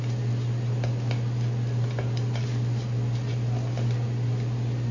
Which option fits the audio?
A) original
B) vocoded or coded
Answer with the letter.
A